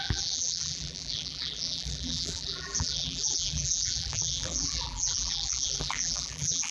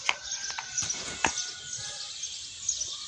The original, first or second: second